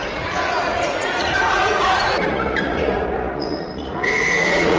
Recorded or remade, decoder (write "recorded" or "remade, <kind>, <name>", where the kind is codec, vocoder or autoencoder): remade, vocoder, Vocos